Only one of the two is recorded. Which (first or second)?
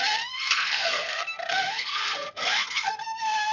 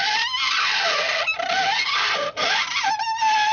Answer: second